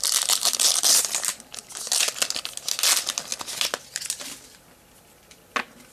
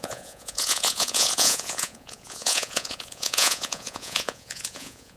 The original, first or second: first